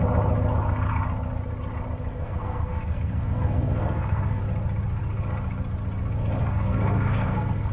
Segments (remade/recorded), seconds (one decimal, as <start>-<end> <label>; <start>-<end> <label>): 0.0-2.1 recorded; 2.1-4.4 remade; 4.4-6.4 recorded; 6.4-7.7 remade